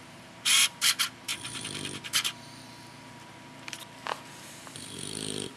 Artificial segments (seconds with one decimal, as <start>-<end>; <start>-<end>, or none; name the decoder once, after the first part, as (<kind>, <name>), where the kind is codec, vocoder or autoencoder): 0.0-5.6 (vocoder, BigVGAN v2)